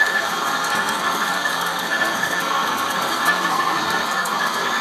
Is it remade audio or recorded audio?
remade